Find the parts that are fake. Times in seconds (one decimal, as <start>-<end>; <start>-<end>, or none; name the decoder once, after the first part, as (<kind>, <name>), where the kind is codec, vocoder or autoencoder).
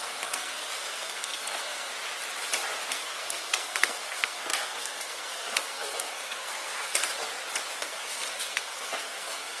0.0-1.9 (codec, SNAC); 2.9-7.1; 7.8-9.6